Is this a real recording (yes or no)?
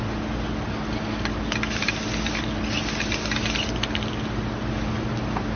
yes